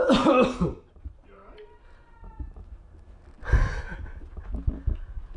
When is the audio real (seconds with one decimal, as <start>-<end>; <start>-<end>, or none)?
0.0-0.7; 2.6-5.4